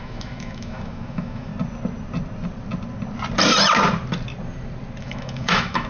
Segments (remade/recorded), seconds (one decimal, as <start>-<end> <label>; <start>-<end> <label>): 0.0-1.5 remade; 1.5-5.0 recorded; 5.0-5.9 remade